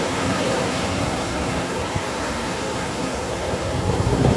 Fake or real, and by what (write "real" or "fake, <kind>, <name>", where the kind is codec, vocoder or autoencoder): fake, codec, SNAC